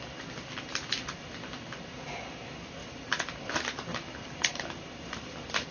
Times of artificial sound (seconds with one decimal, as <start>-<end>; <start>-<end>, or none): 2.8-3.5